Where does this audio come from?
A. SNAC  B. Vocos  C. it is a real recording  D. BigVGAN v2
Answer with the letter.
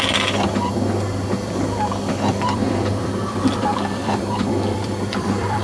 D